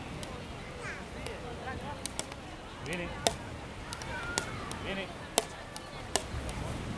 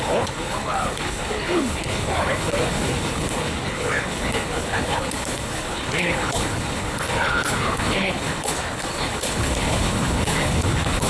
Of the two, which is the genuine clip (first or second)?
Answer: first